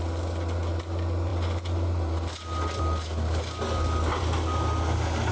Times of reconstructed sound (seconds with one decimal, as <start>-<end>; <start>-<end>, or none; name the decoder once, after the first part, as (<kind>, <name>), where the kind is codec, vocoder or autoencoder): none